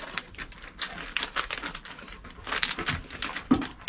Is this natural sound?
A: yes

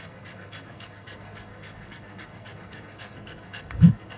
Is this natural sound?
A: no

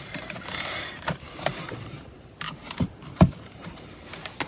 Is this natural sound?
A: no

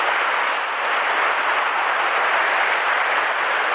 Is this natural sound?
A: yes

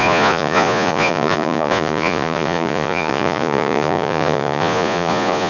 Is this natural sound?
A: no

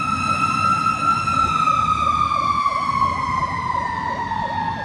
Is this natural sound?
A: yes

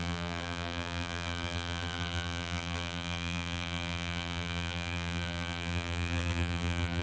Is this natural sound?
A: no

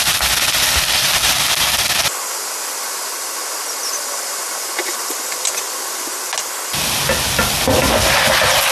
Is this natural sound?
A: yes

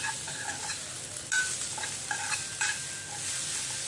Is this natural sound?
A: yes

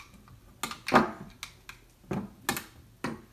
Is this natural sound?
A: yes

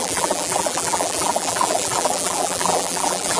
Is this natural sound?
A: no